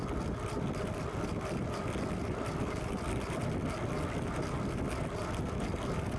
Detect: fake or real real